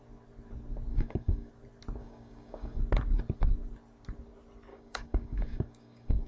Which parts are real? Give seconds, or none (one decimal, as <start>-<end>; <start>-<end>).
0.0-0.9; 1.5-2.0; 2.8-4.7

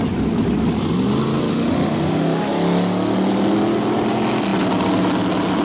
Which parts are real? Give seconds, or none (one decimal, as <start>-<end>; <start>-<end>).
0.0-1.5; 2.5-5.6

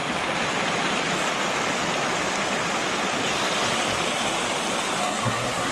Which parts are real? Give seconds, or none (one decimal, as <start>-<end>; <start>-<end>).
0.0-5.0

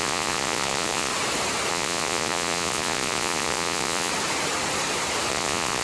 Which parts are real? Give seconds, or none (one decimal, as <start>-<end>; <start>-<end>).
1.1-1.7; 4.1-5.3

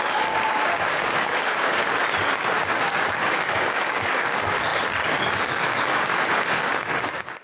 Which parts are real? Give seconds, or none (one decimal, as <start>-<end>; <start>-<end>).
1.8-2.3

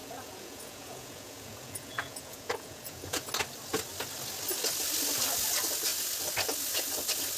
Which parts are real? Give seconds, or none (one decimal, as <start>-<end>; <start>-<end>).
3.3-7.4

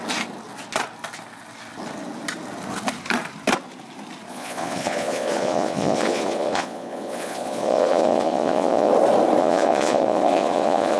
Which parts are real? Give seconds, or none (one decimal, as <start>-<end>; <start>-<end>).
0.0-4.3; 8.9-9.4

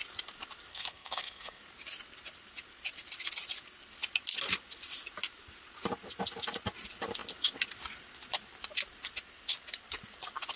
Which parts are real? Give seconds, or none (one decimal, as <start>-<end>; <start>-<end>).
0.0-0.7; 1.6-10.6